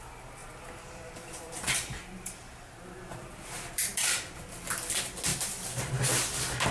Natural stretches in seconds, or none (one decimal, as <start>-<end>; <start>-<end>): 0.0-0.4; 4.4-5.3; 5.9-6.7